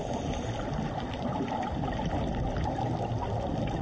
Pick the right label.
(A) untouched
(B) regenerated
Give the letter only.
A